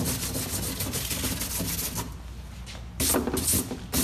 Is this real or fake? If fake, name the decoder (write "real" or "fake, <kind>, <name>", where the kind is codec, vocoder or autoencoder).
real